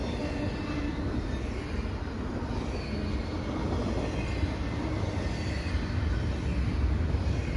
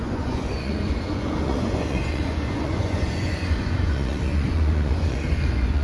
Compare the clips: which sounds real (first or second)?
first